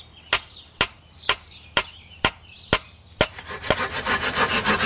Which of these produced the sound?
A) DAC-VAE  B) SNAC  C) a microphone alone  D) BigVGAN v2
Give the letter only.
C